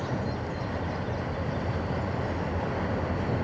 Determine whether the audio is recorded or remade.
recorded